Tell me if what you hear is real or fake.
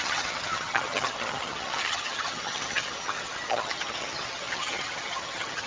fake